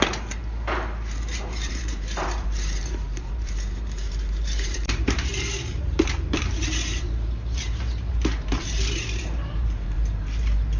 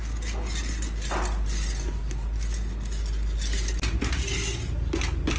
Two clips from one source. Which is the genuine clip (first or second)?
second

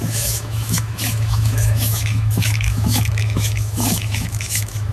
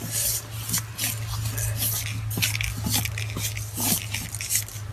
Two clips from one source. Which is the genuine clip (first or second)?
second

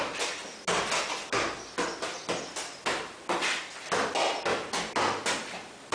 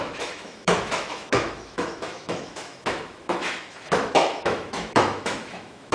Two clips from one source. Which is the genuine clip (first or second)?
first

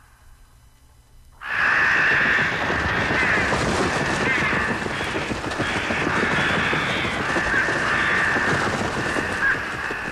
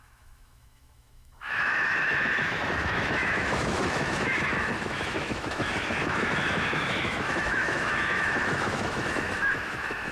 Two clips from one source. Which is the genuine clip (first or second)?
first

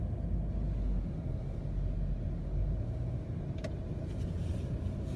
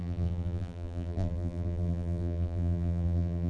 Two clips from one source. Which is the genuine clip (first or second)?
first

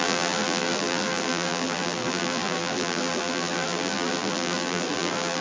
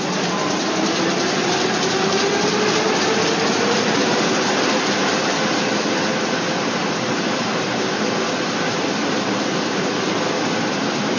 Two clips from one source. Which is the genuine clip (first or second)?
second